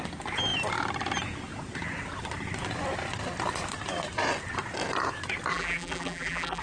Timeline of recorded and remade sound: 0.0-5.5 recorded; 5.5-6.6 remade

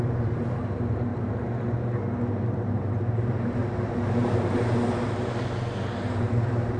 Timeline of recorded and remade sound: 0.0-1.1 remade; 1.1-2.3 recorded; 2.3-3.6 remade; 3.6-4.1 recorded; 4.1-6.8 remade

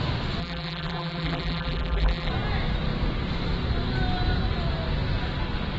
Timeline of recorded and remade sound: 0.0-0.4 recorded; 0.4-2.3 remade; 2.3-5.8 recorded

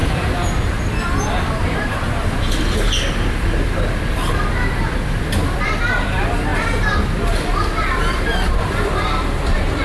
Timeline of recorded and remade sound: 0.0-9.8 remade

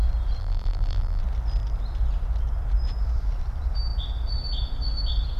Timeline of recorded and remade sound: 0.0-0.4 recorded; 0.4-1.2 remade; 1.2-5.4 recorded

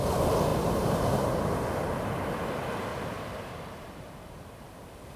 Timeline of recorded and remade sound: 0.0-0.5 recorded; 0.5-1.4 remade; 1.4-2.9 recorded; 2.9-5.2 remade

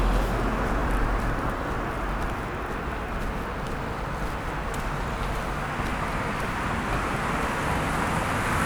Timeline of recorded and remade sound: 0.0-0.8 recorded; 0.8-1.5 remade; 1.5-8.7 recorded